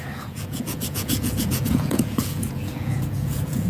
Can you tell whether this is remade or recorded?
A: remade